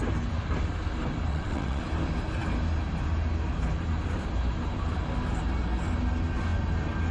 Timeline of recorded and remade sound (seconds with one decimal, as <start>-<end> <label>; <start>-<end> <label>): 0.0-1.3 recorded; 1.3-1.8 remade; 1.8-7.1 recorded

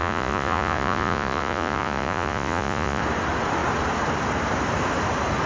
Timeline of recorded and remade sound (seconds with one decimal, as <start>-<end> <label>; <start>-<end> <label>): 0.0-3.0 remade; 3.0-5.5 recorded